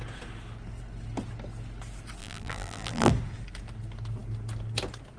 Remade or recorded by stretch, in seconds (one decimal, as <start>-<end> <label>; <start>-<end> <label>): 0.0-2.2 recorded; 2.2-3.1 remade; 3.1-5.2 recorded